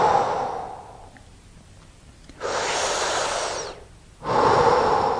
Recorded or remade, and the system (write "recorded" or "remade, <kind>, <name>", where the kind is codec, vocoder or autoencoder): recorded